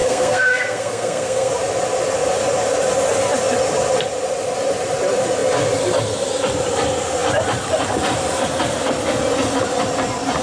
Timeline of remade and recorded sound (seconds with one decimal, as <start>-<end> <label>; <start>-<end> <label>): 0.0-1.5 remade; 1.5-10.4 recorded